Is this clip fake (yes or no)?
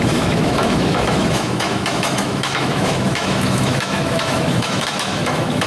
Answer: yes